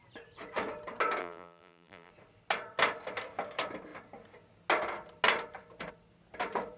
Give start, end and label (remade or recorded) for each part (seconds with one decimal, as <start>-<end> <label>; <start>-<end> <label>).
0.0-1.2 recorded; 1.2-2.1 remade; 2.1-6.8 recorded